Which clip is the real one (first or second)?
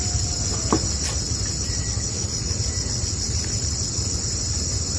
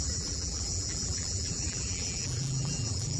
first